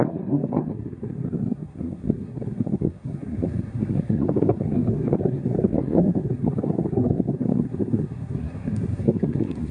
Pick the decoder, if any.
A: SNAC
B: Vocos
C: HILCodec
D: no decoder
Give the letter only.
A